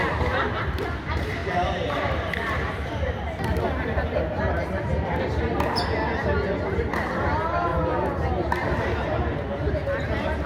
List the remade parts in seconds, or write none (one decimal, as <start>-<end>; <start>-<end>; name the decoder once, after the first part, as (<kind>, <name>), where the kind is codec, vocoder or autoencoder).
none